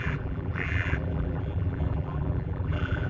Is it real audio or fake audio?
fake